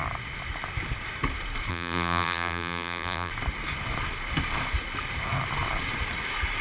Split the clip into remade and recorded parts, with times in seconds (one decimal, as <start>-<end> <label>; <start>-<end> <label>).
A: 0.0-1.7 recorded; 1.7-3.3 remade; 3.3-6.6 recorded